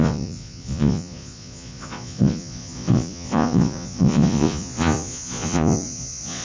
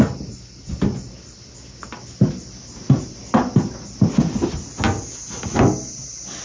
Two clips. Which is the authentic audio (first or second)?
second